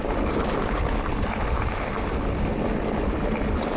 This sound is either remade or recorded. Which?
recorded